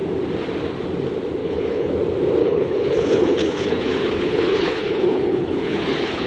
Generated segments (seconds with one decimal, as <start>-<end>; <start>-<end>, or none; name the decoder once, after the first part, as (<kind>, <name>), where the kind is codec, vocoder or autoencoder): 1.4-1.9 (codec, HILCodec); 2.4-6.3